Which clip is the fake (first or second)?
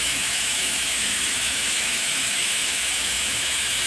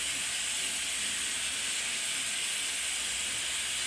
first